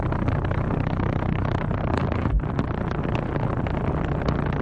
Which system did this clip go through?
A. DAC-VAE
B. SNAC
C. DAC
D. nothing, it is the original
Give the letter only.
D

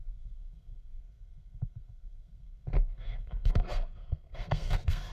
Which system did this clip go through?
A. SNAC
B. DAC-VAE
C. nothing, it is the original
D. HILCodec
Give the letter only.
A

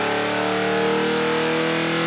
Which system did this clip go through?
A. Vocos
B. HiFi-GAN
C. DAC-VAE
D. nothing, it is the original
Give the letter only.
D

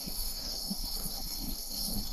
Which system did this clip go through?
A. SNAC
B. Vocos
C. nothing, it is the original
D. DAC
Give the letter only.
A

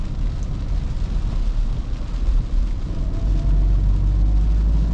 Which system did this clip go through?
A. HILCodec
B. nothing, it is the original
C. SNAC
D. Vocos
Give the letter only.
B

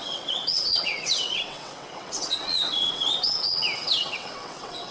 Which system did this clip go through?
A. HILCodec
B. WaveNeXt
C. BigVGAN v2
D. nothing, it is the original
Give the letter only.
B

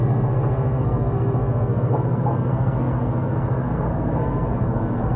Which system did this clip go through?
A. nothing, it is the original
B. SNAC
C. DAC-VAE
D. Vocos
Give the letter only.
B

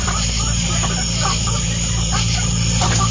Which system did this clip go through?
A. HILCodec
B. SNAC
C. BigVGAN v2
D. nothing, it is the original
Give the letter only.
C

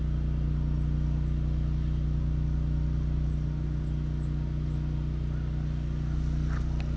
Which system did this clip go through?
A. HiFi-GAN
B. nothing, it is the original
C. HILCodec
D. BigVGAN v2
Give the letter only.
B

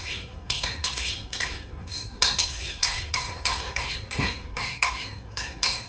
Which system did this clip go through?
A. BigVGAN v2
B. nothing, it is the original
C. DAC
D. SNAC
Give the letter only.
D